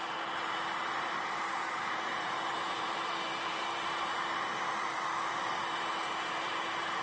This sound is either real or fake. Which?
fake